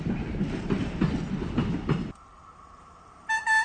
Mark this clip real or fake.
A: real